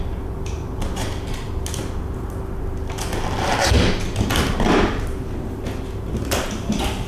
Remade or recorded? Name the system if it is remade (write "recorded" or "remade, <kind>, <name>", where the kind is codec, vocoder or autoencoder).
recorded